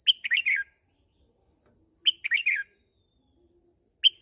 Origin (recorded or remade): recorded